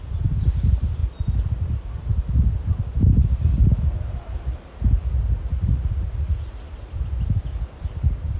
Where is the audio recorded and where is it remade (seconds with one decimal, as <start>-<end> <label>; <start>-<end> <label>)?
0.0-5.5 recorded; 5.5-6.5 remade; 6.5-8.4 recorded